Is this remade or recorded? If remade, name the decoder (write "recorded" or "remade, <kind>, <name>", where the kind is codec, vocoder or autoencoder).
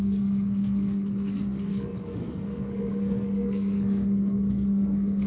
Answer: remade, codec, SNAC